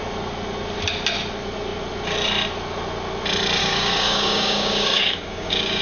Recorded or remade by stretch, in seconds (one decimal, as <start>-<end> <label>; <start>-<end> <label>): 0.0-3.6 recorded; 3.6-5.8 remade